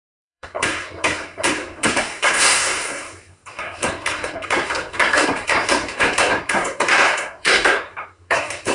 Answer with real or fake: fake